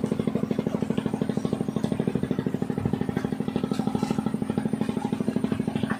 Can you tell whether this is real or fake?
real